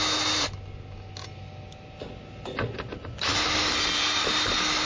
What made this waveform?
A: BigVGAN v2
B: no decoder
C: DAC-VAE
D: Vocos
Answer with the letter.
B